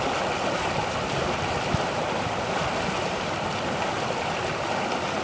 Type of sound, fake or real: real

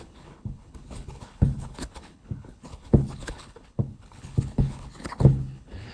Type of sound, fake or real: fake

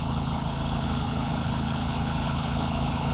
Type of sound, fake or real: fake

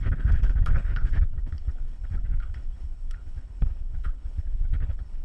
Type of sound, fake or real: fake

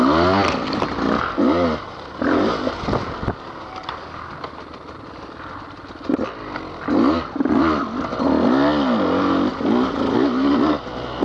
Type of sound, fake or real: real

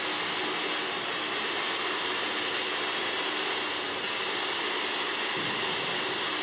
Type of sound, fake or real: real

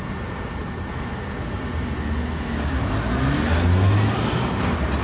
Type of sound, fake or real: real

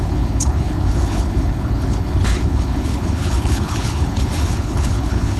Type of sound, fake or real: fake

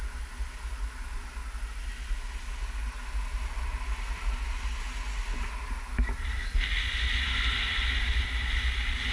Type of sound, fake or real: real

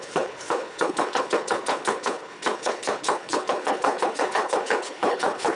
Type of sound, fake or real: fake